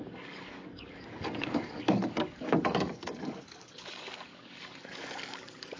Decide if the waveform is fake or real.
fake